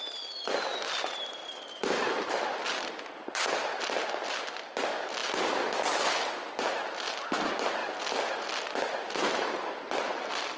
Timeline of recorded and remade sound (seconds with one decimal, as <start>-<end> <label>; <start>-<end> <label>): 0.0-10.6 recorded